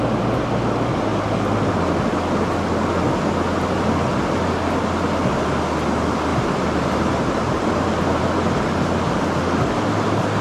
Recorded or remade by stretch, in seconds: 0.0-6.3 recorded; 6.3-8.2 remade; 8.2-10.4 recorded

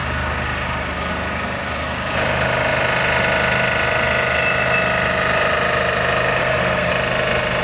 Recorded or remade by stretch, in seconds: 0.0-6.4 recorded; 6.4-6.9 remade; 6.9-7.6 recorded

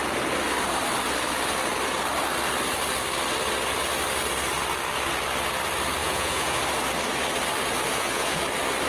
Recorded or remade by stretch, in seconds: 0.0-6.0 recorded; 6.0-6.6 remade; 6.6-7.9 recorded; 7.9-8.4 remade; 8.4-8.9 recorded

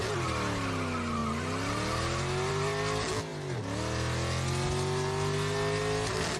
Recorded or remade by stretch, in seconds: 0.0-6.4 recorded

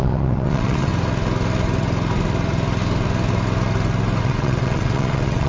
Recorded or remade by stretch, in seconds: 0.0-0.9 remade; 0.9-4.2 recorded; 4.2-5.5 remade

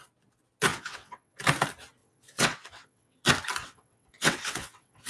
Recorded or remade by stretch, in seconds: 0.0-0.7 recorded; 0.7-1.4 remade; 1.4-2.0 recorded; 2.0-3.2 remade; 3.2-3.6 recorded; 3.6-5.1 remade

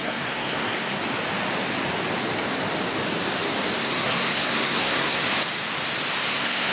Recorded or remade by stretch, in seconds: 0.0-1.0 remade; 1.0-3.8 recorded; 3.8-5.2 remade; 5.2-6.3 recorded; 6.3-6.7 remade